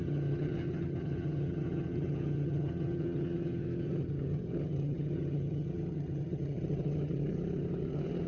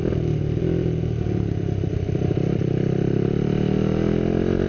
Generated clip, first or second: first